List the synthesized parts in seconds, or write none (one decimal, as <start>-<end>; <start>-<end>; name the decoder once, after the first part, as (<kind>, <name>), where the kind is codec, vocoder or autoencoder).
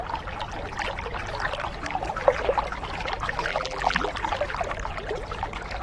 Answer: 3.5-4.1 (vocoder, BigVGAN v2)